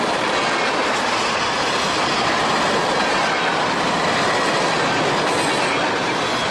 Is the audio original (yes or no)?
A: yes